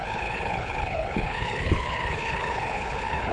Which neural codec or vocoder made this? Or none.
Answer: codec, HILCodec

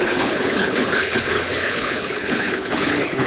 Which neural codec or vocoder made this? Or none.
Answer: codec, HILCodec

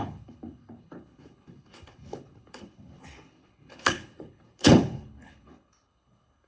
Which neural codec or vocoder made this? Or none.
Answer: codec, HILCodec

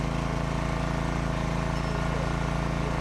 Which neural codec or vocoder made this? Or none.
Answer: none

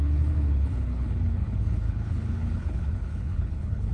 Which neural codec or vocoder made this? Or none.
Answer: codec, HILCodec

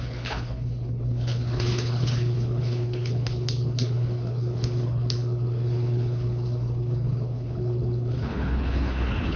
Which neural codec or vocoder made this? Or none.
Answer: codec, HILCodec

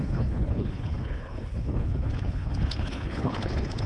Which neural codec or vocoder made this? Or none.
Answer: codec, HILCodec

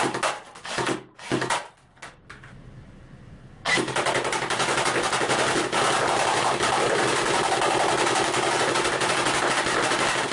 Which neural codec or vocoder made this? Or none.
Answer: none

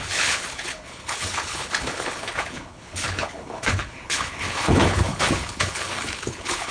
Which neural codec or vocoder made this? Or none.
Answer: codec, HILCodec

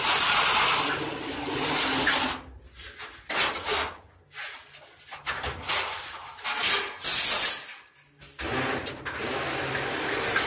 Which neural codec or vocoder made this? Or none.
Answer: none